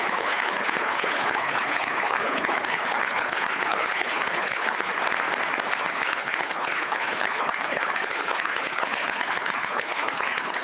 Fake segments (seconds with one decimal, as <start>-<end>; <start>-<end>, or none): 0.0-4.9; 5.8-10.6